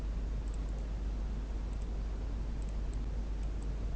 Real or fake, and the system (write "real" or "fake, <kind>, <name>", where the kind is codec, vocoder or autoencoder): real